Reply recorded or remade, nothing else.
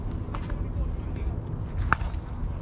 recorded